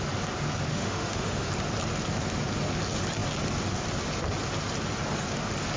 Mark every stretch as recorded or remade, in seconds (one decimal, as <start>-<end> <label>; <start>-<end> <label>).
0.0-0.7 recorded; 0.7-1.5 remade; 1.5-5.8 recorded